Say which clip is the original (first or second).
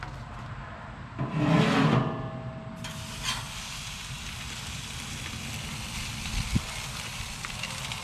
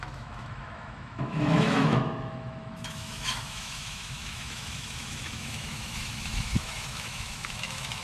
first